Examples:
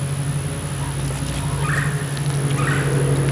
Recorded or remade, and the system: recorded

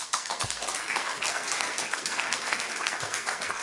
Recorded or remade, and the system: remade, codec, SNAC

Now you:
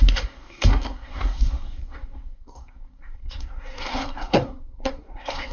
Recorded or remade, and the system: remade, codec, SNAC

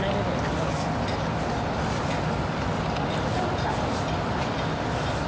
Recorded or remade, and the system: recorded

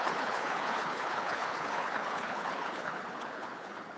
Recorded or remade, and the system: remade, codec, HILCodec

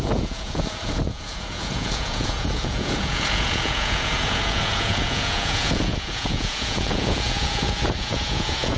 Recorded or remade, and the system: remade, vocoder, Vocos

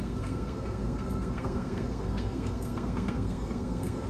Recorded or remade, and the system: remade, codec, SNAC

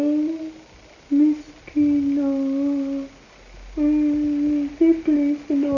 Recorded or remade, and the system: recorded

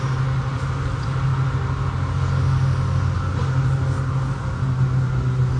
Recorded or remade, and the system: recorded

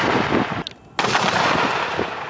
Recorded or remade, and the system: recorded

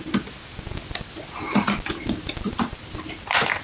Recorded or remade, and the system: recorded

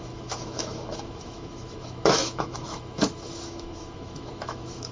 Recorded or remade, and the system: remade, autoencoder, DAC-VAE